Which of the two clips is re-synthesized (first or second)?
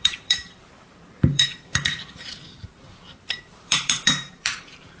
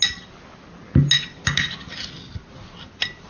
first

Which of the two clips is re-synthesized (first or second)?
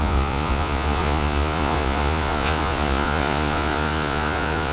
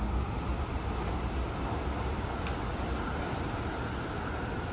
first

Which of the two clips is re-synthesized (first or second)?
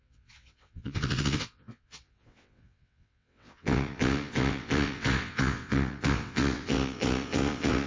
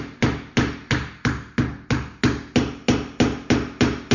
first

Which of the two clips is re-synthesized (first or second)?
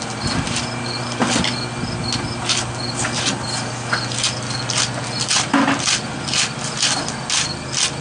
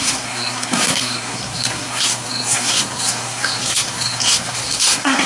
second